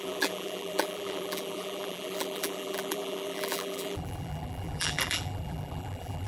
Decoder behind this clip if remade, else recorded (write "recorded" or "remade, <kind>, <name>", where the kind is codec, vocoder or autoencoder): remade, vocoder, BigVGAN v2